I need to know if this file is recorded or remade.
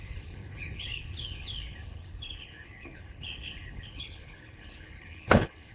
remade